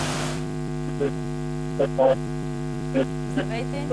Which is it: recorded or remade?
remade